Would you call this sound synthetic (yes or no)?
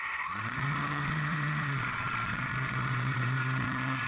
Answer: yes